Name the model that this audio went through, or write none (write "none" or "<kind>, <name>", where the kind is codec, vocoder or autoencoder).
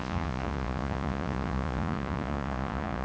vocoder, Vocos